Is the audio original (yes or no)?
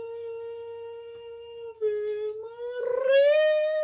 no